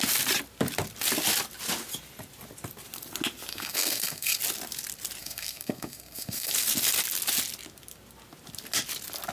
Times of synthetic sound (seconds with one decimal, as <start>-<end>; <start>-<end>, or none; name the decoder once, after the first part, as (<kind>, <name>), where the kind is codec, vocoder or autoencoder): 3.5-4.4 (codec, SNAC); 5.2-6.5